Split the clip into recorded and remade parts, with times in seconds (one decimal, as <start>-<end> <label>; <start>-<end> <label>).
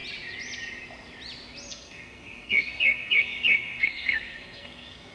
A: 0.0-1.7 recorded; 1.7-5.1 remade